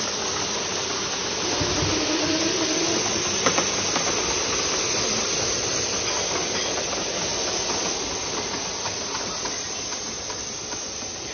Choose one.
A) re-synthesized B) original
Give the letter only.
B